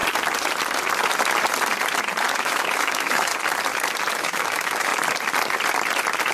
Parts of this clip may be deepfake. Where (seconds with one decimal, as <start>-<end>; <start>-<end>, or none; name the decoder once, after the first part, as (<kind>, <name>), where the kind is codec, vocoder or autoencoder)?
2.4-3.3 (autoencoder, DAC-VAE); 4.1-4.9